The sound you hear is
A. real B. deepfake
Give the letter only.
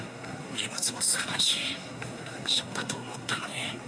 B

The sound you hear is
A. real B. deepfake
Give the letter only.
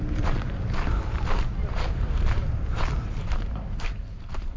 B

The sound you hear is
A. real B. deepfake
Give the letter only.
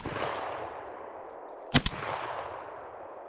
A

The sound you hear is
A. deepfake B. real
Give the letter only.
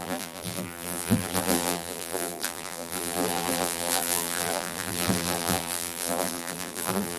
A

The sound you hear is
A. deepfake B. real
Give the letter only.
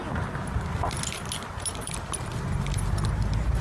B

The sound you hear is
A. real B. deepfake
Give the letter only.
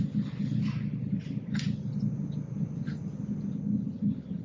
A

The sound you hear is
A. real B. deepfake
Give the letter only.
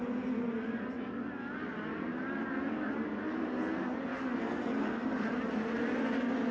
A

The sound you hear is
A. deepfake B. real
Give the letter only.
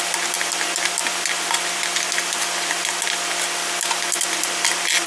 B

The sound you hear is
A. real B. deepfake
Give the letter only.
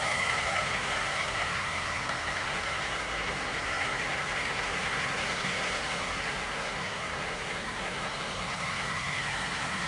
B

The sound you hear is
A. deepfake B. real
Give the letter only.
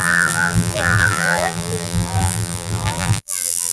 A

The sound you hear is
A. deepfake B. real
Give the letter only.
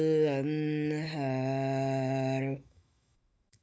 A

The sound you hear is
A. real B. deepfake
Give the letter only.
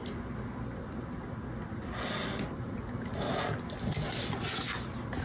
A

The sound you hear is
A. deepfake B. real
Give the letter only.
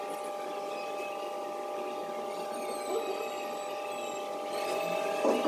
B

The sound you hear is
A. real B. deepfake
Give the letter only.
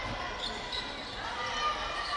A